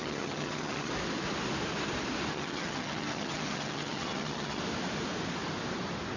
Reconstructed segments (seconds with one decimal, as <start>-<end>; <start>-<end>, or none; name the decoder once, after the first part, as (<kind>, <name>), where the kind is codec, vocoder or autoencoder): 0.0-0.9 (vocoder, HiFi-GAN); 2.3-4.6